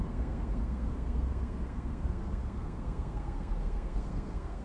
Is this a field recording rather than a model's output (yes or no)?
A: no